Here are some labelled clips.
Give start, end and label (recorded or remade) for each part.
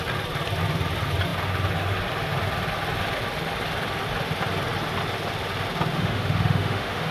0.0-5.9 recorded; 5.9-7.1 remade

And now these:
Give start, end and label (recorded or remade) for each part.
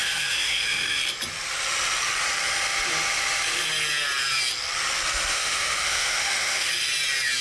0.0-1.0 remade; 1.0-5.3 recorded; 5.3-6.7 remade; 6.7-7.4 recorded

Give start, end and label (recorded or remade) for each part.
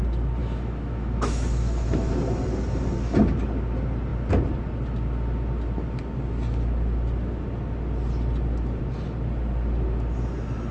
0.0-0.4 recorded; 0.4-2.1 remade; 2.1-10.7 recorded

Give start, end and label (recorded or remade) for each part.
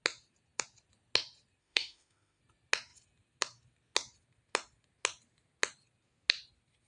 0.0-1.6 recorded; 1.6-2.4 remade; 2.4-6.9 recorded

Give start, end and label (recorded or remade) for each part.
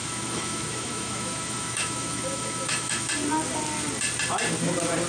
0.0-3.1 remade; 3.1-5.1 recorded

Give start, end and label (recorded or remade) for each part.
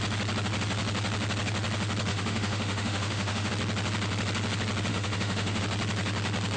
0.0-2.1 recorded; 2.1-3.5 remade; 3.5-4.9 recorded; 4.9-5.6 remade; 5.6-6.6 recorded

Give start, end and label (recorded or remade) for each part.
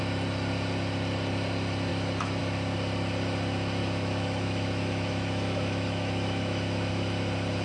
0.0-1.9 recorded; 1.9-2.4 remade; 2.4-3.8 recorded; 3.8-6.9 remade; 6.9-7.6 recorded